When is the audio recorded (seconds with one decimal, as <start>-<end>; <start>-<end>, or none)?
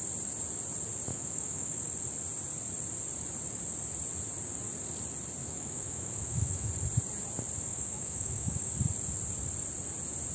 0.0-1.1; 1.8-5.4; 6.7-7.7; 8.7-10.3